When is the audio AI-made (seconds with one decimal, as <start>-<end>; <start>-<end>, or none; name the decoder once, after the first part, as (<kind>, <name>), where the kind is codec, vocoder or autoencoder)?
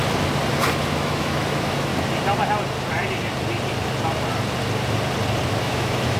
0.9-1.9 (autoencoder, DAC-VAE); 5.6-6.2